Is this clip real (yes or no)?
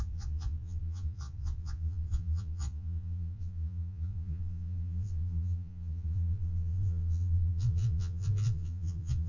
no